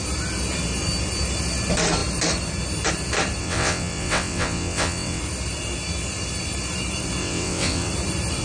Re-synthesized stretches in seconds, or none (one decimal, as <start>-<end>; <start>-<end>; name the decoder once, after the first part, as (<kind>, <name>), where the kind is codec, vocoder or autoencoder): 3.4-5.2 (vocoder, WaveNeXt); 7.2-7.9